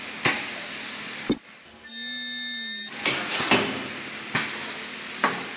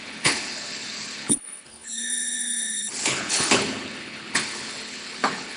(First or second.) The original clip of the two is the first